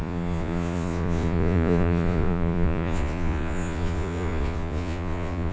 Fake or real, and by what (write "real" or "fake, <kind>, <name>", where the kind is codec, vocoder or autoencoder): fake, vocoder, Vocos